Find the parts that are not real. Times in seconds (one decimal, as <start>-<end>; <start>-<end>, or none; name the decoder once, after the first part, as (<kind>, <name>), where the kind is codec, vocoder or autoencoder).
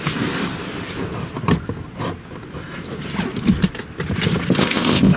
4.6-5.2 (codec, ZipCodec)